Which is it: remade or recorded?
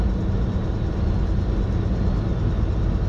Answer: recorded